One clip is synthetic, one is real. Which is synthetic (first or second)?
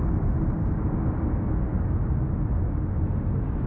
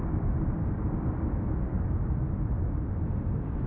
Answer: second